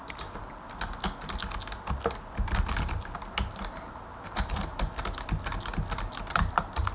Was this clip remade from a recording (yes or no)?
no